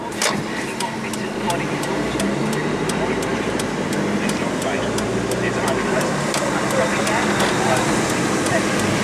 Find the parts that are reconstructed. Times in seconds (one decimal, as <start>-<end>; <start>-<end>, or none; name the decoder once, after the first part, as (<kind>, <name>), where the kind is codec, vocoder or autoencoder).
none